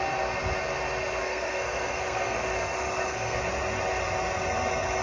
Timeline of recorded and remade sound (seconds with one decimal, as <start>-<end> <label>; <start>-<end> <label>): 0.0-1.2 recorded; 1.2-3.4 remade; 3.4-5.0 recorded